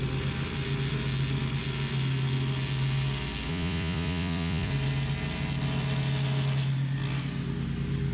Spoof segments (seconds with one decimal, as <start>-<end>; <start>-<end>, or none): 3.5-4.7